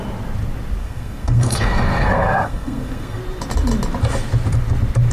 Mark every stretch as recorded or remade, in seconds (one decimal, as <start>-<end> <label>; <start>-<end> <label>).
0.0-0.8 recorded; 0.8-3.2 remade; 3.2-5.1 recorded